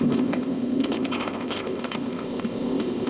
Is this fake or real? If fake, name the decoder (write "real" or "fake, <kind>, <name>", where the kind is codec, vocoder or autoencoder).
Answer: fake, codec, ZipCodec